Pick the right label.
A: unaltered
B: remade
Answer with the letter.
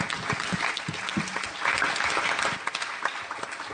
A